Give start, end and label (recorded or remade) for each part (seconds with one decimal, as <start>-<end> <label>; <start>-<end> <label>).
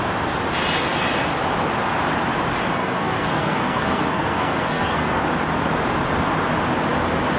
0.0-2.7 recorded; 2.7-5.2 remade; 5.2-7.4 recorded